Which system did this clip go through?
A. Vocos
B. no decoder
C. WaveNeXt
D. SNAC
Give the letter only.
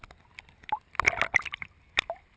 B